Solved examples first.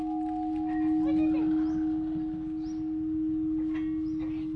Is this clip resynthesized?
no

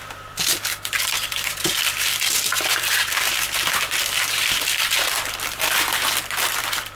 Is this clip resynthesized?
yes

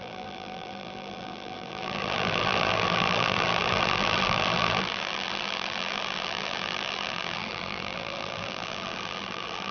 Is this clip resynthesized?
yes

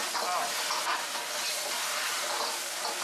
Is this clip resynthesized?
no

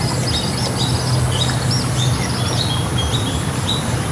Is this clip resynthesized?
no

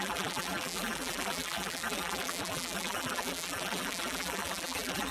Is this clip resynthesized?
yes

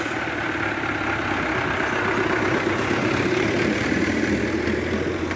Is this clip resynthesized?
yes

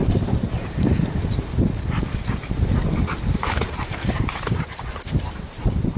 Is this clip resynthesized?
yes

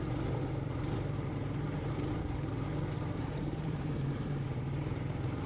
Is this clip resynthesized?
yes